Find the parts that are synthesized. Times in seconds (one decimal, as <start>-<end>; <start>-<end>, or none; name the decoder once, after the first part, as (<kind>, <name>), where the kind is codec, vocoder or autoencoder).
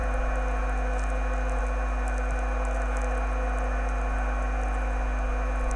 none